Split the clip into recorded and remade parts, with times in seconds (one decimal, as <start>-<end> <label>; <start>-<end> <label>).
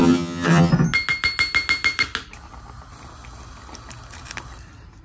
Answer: 0.0-0.7 remade; 0.7-5.0 recorded